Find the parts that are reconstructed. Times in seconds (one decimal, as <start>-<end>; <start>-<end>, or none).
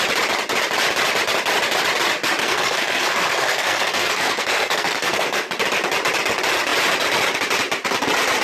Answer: 2.4-5.5